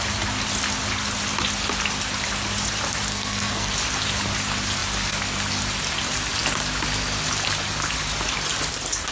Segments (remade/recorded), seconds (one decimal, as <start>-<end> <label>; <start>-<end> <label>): 0.0-3.1 recorded; 3.1-3.7 remade; 3.7-9.1 recorded